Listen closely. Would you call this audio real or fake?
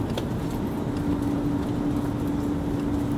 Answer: real